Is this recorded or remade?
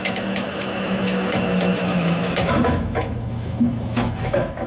remade